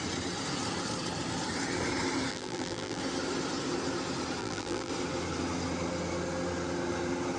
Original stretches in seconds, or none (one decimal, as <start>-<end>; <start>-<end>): 0.0-2.3; 3.0-4.4; 4.9-7.4